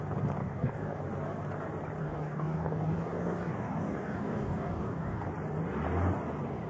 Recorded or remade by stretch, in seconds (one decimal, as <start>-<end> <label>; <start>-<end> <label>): 0.0-0.4 recorded; 0.4-1.0 remade; 1.0-2.0 recorded; 2.0-5.2 remade; 5.2-6.7 recorded